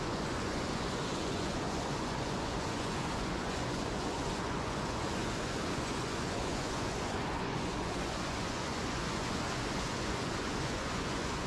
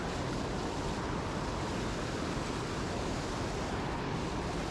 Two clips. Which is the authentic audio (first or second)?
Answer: second